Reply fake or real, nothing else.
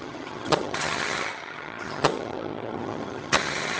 fake